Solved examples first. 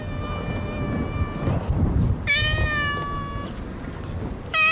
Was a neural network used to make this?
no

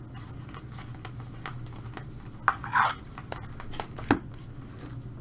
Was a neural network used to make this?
no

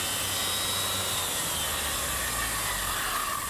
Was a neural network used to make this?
no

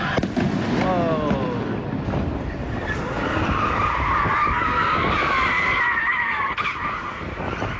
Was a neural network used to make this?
no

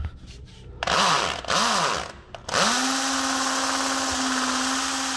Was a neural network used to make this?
no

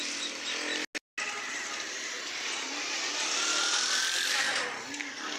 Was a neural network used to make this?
no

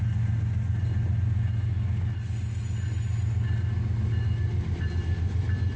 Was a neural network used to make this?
no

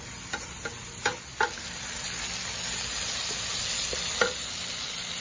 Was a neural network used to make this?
no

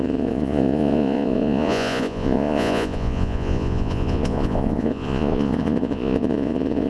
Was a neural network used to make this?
yes